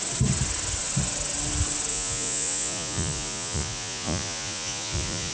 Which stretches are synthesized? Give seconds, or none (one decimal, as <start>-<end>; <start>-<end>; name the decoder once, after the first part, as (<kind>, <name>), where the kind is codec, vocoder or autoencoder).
1.9-5.3 (vocoder, Vocos)